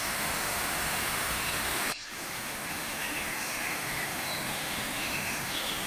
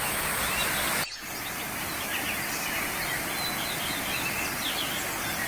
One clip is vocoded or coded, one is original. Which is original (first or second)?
second